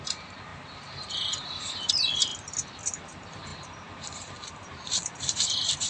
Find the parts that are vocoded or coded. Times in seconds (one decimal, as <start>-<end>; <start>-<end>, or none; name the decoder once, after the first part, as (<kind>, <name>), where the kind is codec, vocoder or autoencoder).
0.0-2.3 (vocoder, BigVGAN v2); 3.0-5.9